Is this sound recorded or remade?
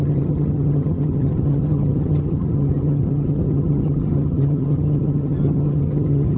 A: remade